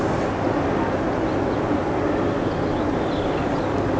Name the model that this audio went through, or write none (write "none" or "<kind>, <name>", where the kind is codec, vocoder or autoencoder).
none